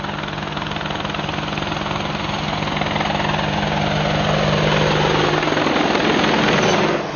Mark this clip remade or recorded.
recorded